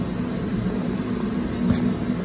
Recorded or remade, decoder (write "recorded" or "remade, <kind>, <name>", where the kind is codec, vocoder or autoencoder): recorded